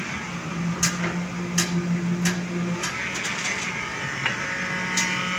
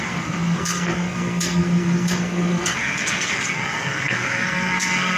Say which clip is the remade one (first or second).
second